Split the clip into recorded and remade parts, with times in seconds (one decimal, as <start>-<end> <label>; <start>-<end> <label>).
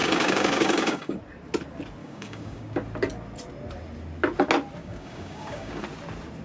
0.0-1.2 remade; 1.2-2.0 recorded; 2.0-2.7 remade; 2.7-4.8 recorded; 4.8-5.8 remade; 5.8-6.4 recorded